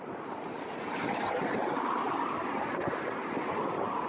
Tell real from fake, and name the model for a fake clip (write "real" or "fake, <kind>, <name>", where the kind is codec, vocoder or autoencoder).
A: real